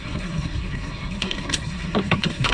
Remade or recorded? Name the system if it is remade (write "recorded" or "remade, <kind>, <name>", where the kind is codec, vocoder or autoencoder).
remade, codec, SNAC